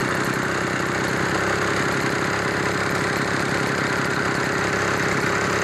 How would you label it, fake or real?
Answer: real